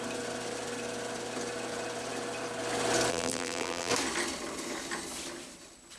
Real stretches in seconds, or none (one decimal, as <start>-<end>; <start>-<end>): 0.0-3.1; 3.9-6.0